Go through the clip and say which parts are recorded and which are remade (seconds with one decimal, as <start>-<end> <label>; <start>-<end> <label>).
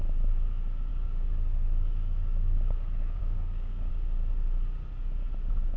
0.0-0.9 recorded; 0.9-3.9 remade; 3.9-5.8 recorded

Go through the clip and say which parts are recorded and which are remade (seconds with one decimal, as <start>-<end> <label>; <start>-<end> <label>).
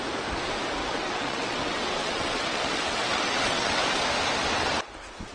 0.0-0.8 recorded; 0.8-4.0 remade; 4.0-5.3 recorded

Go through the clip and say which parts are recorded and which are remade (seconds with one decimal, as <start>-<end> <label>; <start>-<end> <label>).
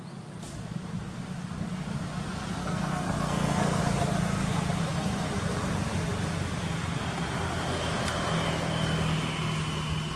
0.0-2.6 recorded; 2.6-3.8 remade; 3.8-10.2 recorded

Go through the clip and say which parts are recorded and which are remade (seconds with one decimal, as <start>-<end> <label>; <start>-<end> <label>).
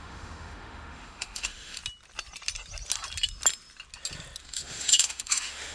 0.0-1.8 remade; 1.8-4.4 recorded; 4.4-5.7 remade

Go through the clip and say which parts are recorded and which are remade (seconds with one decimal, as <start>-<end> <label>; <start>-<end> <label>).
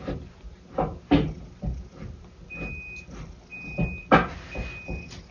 0.0-5.3 recorded